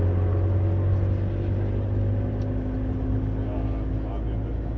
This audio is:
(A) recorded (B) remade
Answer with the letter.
A